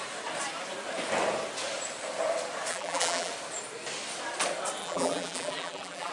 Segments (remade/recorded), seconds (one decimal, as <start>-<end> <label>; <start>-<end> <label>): 0.0-2.7 recorded; 2.7-3.3 remade; 3.3-4.8 recorded; 4.8-6.1 remade